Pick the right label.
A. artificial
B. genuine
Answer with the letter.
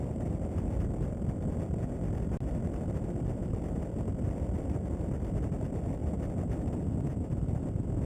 B